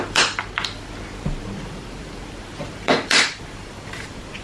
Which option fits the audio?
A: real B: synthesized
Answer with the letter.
B